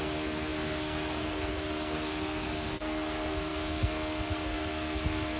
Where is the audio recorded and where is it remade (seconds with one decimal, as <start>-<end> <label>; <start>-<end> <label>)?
0.0-5.4 remade